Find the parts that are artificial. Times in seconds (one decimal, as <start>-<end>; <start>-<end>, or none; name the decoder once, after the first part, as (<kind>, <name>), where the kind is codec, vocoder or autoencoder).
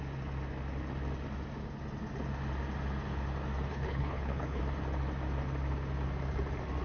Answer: 3.7-4.6 (codec, HILCodec)